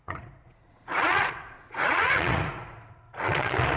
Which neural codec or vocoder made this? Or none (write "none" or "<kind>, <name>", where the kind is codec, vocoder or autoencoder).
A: vocoder, Vocos